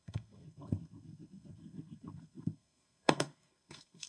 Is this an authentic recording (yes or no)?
no